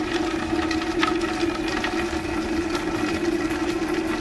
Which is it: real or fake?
real